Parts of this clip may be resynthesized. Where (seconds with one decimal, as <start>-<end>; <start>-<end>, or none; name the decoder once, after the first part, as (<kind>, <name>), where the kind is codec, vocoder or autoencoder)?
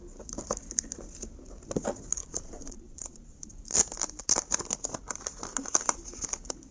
2.2-3.5 (vocoder, Vocos)